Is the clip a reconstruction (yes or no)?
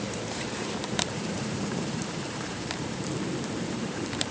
yes